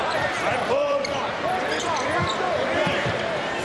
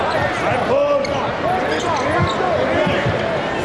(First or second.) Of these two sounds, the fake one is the first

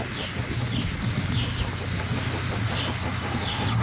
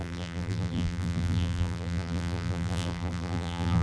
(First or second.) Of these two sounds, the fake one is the second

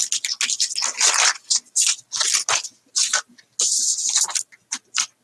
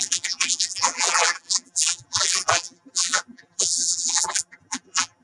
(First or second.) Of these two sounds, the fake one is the second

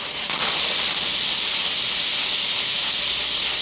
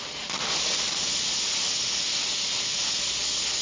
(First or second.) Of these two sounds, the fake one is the first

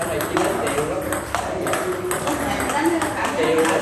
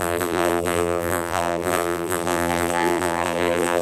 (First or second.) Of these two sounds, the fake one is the second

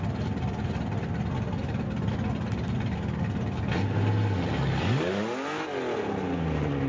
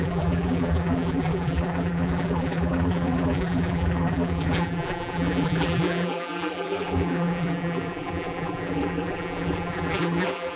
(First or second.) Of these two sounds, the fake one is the second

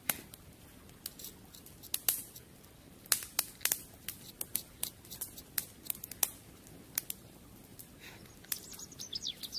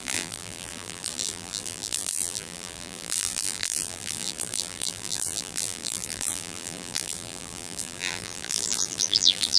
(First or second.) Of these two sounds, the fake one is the second